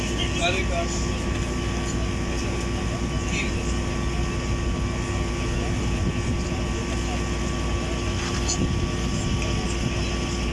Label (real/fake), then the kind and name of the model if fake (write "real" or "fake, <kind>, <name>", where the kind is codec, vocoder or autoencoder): real